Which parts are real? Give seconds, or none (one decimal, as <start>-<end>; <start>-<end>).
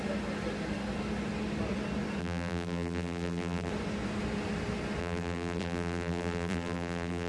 0.0-2.2; 3.7-5.0